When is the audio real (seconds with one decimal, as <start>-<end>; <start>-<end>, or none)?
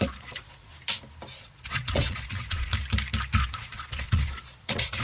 0.7-1.4; 2.7-3.4